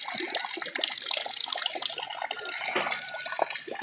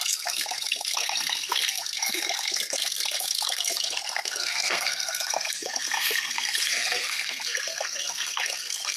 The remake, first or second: second